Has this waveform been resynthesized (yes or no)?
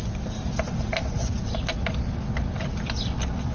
no